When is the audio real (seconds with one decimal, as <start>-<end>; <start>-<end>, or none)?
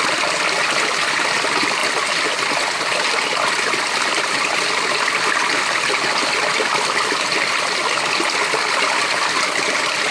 0.0-10.1